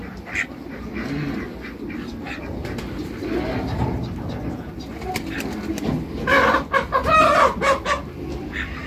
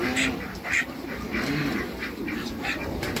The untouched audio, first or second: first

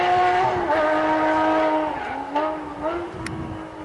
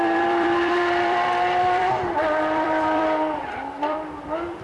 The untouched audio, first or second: first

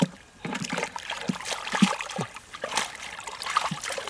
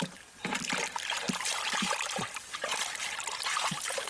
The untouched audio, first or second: second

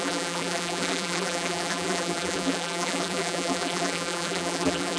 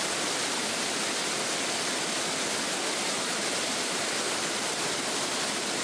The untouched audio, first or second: second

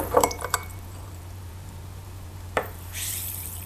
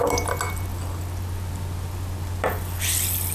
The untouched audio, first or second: second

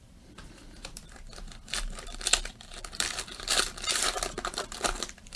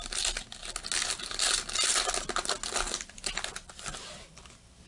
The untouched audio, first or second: second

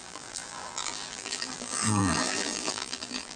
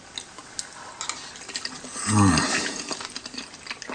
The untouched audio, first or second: second